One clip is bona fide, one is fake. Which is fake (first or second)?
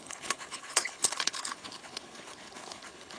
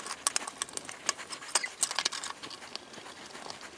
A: first